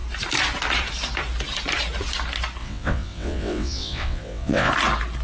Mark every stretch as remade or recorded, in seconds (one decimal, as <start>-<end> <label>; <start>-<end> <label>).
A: 0.0-2.6 recorded; 2.6-4.7 remade; 4.7-5.2 recorded